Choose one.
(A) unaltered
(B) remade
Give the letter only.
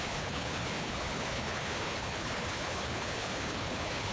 B